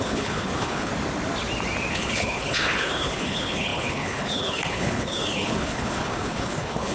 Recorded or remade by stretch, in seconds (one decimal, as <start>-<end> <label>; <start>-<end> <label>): 0.0-0.9 remade; 0.9-1.9 recorded; 1.9-6.9 remade